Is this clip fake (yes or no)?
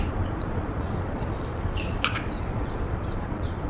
yes